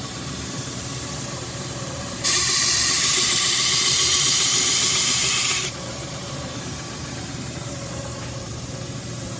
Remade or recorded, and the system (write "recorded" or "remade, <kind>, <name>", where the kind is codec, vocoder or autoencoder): remade, vocoder, BigVGAN v2